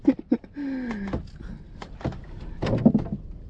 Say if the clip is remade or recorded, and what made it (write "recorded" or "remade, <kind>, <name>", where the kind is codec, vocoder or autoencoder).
recorded